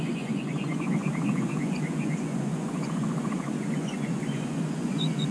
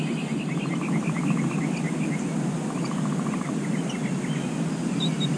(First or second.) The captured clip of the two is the second